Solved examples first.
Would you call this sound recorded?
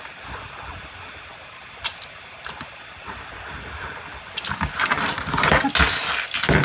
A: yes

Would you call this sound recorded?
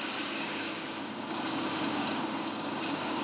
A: no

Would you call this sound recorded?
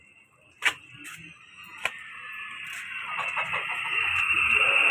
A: yes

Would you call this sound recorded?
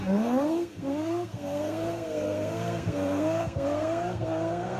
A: no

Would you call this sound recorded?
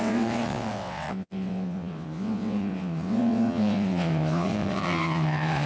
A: no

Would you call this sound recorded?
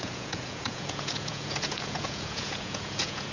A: no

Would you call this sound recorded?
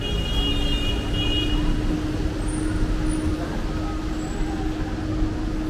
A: yes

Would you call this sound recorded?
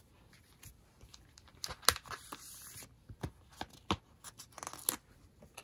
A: yes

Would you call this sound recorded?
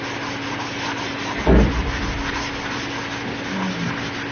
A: yes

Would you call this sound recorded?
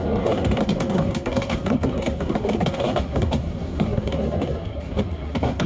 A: no